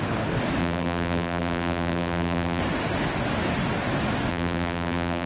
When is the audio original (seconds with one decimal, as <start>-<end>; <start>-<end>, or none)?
0.0-0.6; 2.6-4.3